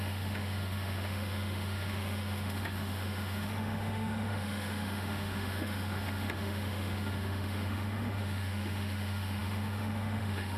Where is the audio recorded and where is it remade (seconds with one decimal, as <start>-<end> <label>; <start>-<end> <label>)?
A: 0.0-10.6 remade